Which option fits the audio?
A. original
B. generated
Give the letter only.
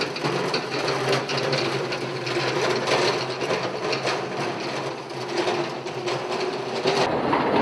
A